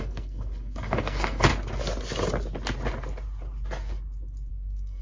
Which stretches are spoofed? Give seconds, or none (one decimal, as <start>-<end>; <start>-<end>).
0.0-1.5; 4.5-5.0